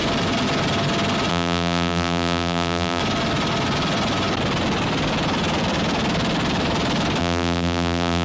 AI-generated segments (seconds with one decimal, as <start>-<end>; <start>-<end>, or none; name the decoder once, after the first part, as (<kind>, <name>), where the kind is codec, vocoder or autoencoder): 1.3-3.0 (vocoder, BigVGAN v2); 7.2-8.2